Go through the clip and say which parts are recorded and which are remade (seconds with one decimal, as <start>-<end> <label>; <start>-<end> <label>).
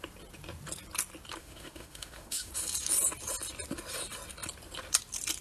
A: 0.0-1.4 recorded; 1.4-2.5 remade; 2.5-5.4 recorded